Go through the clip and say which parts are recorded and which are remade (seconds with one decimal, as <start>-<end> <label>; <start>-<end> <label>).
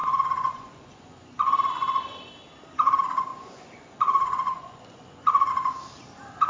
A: 0.0-2.3 remade; 2.3-3.3 recorded; 3.3-5.5 remade; 5.5-6.5 recorded